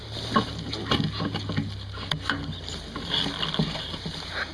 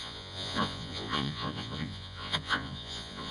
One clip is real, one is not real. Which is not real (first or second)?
second